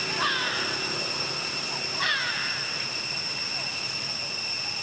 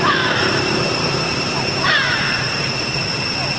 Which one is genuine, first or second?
first